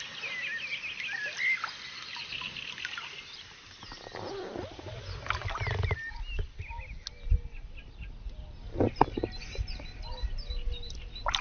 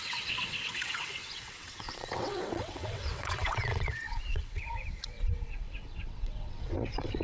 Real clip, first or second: first